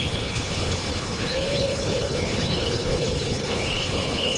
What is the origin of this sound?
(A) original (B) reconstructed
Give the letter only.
B